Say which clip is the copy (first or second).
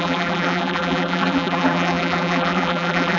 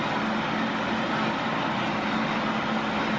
first